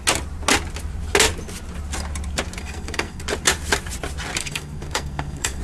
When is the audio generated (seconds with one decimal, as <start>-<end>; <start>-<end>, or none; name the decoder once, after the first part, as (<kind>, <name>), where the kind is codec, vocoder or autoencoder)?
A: 2.6-3.2 (codec, SNAC); 4.4-5.6